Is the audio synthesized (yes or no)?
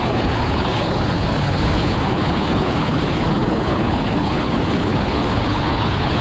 yes